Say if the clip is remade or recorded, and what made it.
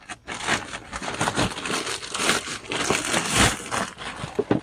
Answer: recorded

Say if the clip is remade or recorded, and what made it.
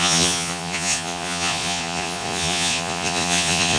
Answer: remade, vocoder, Vocos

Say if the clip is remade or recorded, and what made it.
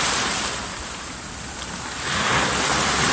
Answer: recorded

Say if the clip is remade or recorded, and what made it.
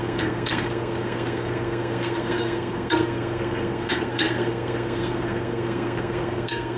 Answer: remade, codec, SNAC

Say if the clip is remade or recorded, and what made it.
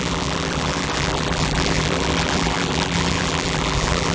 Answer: remade, vocoder, BigVGAN v2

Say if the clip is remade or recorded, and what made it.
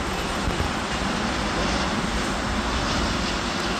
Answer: recorded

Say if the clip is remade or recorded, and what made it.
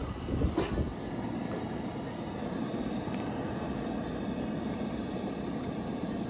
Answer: recorded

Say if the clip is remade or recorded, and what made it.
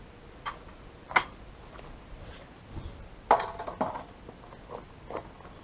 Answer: recorded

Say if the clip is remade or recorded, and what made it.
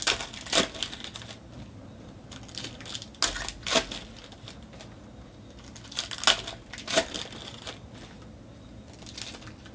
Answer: recorded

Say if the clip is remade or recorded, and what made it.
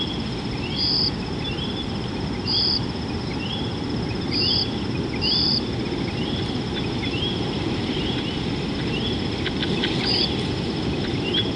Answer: recorded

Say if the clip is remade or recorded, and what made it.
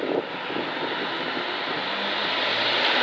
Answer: recorded